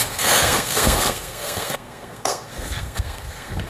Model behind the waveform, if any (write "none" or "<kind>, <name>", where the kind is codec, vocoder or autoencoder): codec, SNAC